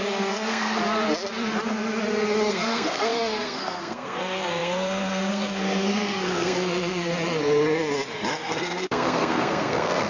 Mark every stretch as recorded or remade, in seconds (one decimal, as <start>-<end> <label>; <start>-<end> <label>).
0.0-0.8 remade; 0.8-2.5 recorded; 2.5-7.1 remade; 7.1-8.3 recorded; 8.3-10.1 remade